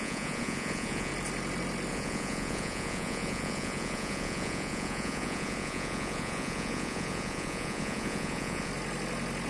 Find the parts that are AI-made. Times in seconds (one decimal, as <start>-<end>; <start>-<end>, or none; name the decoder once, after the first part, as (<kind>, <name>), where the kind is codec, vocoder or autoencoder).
0.0-1.1 (vocoder, Vocos); 1.9-8.7